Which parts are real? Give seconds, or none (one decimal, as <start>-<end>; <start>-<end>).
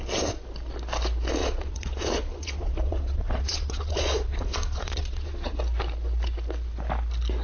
0.0-1.4; 5.6-7.4